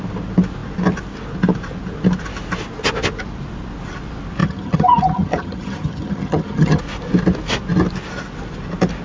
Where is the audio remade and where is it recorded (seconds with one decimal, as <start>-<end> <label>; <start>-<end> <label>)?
0.0-4.4 recorded; 4.4-6.8 remade; 6.8-9.0 recorded